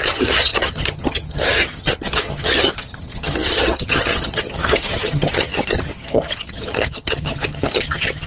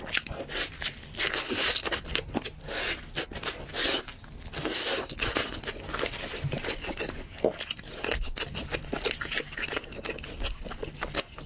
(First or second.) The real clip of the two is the second